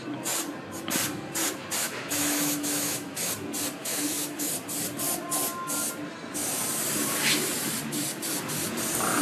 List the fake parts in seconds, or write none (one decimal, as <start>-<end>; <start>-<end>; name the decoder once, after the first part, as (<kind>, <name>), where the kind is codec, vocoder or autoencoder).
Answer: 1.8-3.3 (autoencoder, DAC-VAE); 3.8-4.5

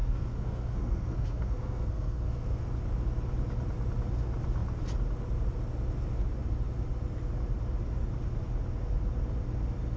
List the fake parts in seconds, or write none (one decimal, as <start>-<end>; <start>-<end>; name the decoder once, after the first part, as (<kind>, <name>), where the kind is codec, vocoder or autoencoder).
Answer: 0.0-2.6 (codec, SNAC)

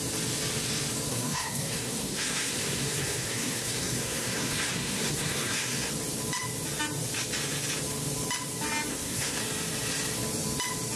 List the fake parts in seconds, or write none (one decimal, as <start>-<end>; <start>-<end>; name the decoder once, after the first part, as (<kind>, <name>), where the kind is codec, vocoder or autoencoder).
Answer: 1.1-5.9 (codec, SNAC); 8.9-9.4

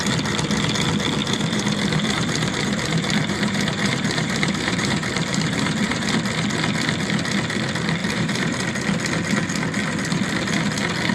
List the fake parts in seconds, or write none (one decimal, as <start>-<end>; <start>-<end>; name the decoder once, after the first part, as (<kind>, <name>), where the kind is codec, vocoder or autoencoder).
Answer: 1.2-6.1 (vocoder, BigVGAN v2); 8.0-8.7

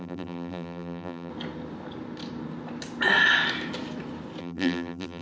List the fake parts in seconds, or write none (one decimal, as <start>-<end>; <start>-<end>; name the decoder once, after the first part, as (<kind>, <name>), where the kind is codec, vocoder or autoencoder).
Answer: 0.0-1.3 (vocoder, BigVGAN v2); 4.4-5.2